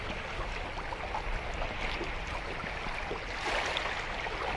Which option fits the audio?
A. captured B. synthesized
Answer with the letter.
A